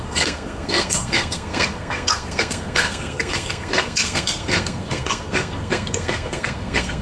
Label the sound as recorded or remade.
remade